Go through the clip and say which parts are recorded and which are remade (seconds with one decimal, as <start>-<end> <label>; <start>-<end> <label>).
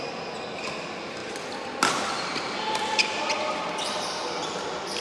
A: 0.0-5.0 recorded